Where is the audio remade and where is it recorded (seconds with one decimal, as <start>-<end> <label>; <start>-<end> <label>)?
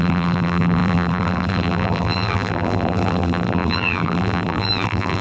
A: 0.0-5.2 remade